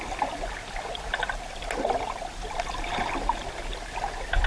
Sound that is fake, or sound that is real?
real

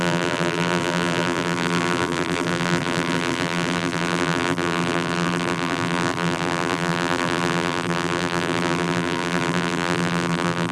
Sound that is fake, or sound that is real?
fake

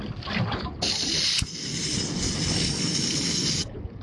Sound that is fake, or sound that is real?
real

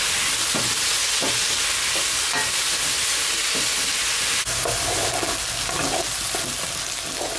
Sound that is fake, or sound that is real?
real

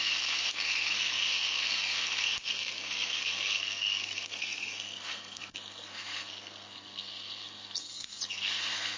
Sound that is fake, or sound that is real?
fake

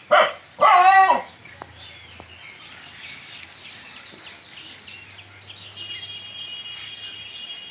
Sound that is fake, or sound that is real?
real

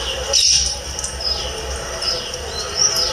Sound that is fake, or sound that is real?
real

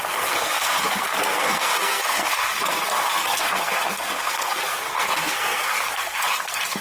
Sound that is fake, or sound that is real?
fake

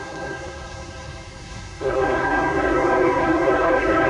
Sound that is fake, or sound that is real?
fake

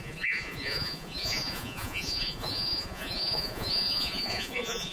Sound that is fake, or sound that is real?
fake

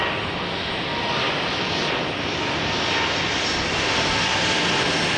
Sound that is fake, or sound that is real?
real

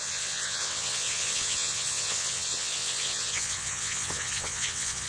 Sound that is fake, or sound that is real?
fake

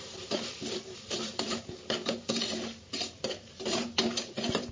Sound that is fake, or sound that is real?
fake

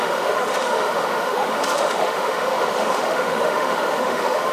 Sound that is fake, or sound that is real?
fake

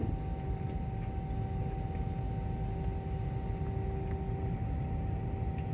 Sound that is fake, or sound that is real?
real